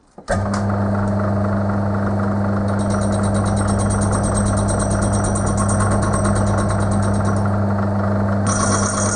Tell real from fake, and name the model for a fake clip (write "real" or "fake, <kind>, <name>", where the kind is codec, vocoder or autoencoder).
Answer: real